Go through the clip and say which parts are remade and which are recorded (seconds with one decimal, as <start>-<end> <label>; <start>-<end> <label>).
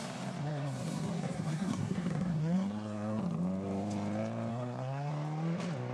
0.0-0.4 recorded; 0.4-3.2 remade; 3.2-4.5 recorded; 4.5-5.1 remade; 5.1-5.9 recorded